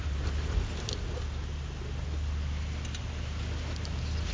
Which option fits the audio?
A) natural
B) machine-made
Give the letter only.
A